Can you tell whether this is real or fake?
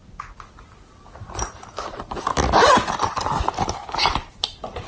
real